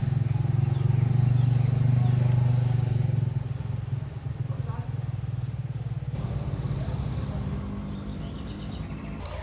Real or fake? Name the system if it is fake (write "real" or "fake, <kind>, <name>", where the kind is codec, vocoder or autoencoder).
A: real